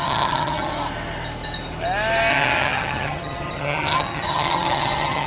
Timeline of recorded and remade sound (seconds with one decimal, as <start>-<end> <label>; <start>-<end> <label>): 0.0-0.7 remade; 0.7-2.3 recorded; 2.3-5.3 remade